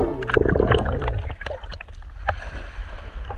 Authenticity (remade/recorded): recorded